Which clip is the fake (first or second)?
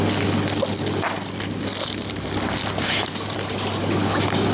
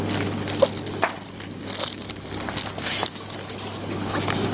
first